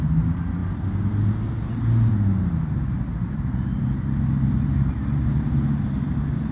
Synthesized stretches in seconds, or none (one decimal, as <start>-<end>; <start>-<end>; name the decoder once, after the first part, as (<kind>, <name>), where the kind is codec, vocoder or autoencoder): 3.2-4.9 (vocoder, BigVGAN v2)